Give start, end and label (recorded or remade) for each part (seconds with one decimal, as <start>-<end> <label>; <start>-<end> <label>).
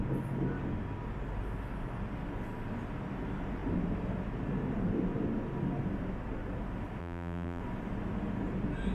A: 0.0-7.0 recorded; 7.0-7.6 remade; 7.6-8.9 recorded